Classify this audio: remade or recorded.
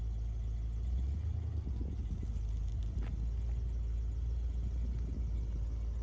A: recorded